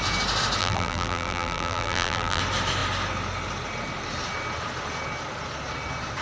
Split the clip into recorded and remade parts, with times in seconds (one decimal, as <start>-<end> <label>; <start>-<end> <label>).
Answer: 0.0-0.6 recorded; 0.6-2.4 remade; 2.4-6.2 recorded